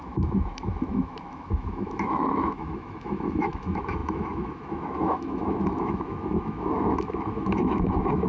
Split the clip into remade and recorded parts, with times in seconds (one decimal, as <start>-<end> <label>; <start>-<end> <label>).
0.0-8.3 remade